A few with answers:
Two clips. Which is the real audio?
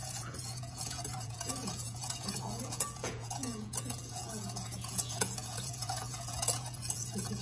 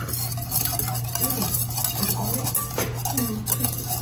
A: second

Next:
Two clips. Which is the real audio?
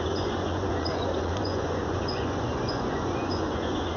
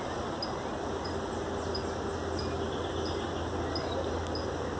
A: second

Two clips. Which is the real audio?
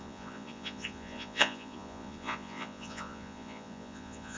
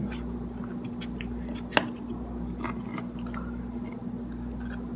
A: second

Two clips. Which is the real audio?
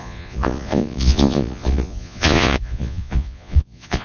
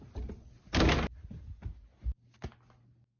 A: second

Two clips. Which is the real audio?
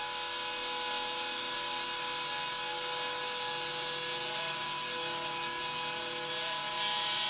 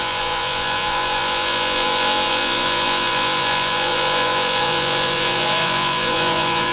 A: first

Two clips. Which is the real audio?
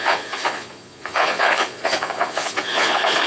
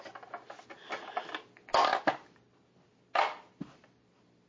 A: second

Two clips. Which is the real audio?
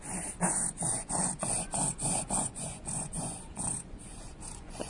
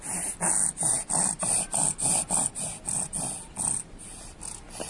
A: second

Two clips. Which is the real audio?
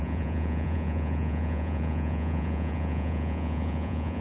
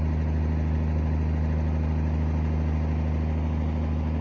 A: second